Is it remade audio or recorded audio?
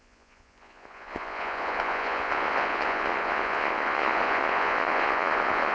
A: remade